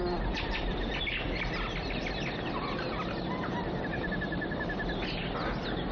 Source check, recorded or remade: recorded